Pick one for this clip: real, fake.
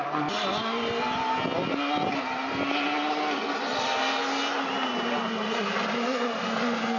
real